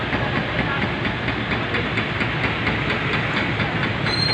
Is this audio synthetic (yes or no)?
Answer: no